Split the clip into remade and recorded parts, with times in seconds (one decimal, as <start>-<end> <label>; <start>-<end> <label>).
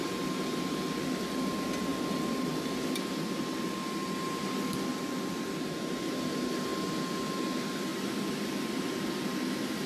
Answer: 0.0-9.9 recorded